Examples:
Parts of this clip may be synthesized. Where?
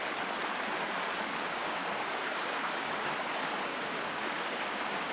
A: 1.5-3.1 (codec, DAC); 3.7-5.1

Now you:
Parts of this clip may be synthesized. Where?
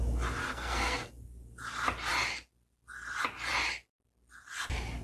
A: 0.4-1.1 (codec, SNAC)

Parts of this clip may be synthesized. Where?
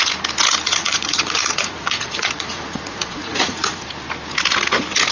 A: 0.7-3.8 (vocoder, Vocos)